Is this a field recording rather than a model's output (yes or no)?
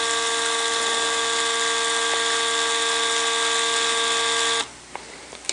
yes